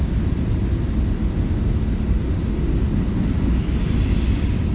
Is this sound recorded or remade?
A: recorded